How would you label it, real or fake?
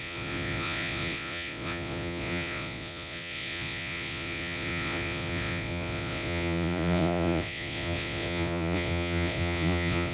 fake